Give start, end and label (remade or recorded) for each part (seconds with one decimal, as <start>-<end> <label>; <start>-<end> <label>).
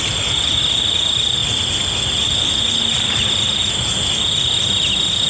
0.0-5.3 recorded